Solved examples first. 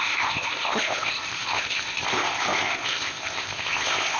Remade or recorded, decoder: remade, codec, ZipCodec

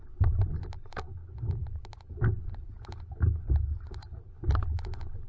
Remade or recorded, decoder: recorded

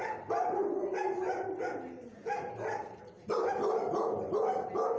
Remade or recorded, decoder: recorded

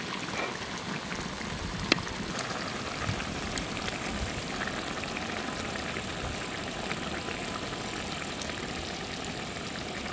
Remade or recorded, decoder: recorded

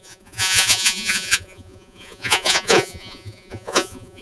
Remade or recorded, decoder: remade, vocoder, Vocos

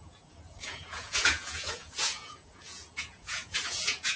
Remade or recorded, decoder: remade, vocoder, Vocos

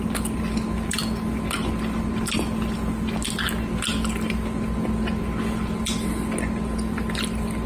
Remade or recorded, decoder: recorded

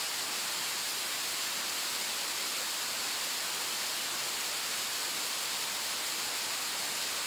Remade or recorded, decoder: recorded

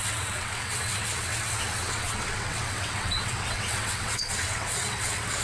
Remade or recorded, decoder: remade, vocoder, WaveNeXt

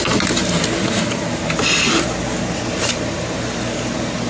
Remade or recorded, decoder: recorded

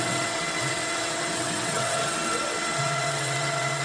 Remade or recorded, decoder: remade, vocoder, WaveNeXt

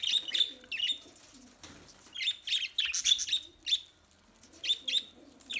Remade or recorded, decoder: recorded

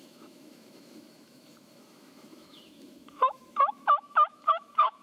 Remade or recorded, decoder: remade, autoencoder, DAC-VAE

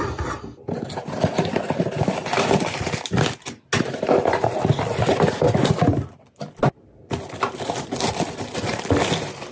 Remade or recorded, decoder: recorded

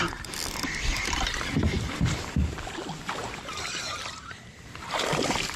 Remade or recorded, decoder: recorded